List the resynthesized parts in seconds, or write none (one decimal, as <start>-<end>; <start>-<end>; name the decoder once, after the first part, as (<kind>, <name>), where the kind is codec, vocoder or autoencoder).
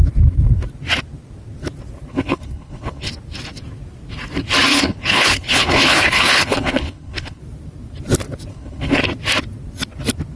2.1-3.1 (codec, HILCodec); 4.7-7.4; 8.5-9.0